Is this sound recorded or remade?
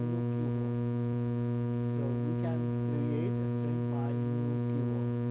remade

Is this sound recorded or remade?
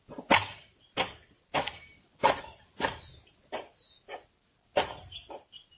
recorded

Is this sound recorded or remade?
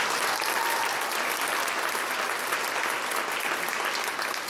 remade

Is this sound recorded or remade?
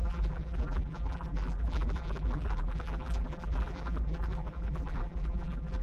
remade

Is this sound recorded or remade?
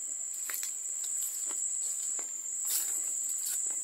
recorded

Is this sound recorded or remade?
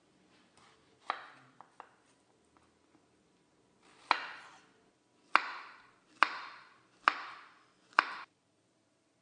recorded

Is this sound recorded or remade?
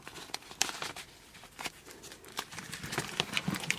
recorded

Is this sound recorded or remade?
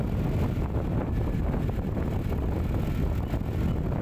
recorded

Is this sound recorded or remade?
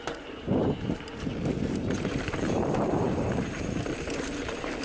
remade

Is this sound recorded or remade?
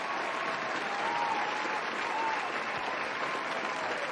remade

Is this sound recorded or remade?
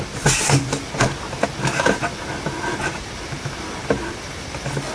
recorded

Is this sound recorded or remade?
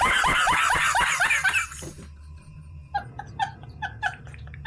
remade